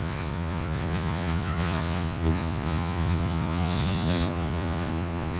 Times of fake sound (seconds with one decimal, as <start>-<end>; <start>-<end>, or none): 0.0-5.4